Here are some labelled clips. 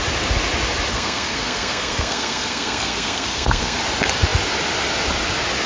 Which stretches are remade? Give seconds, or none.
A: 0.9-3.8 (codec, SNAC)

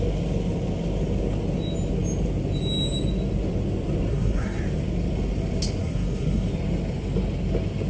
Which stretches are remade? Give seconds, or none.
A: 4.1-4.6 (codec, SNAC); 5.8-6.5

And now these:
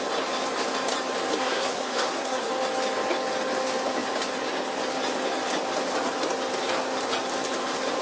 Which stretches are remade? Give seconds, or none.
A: 1.4-2.5 (codec, SNAC)